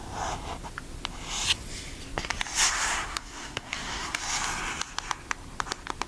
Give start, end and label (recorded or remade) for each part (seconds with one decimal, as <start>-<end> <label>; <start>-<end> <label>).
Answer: 0.0-2.6 recorded; 2.6-4.2 remade; 4.2-6.1 recorded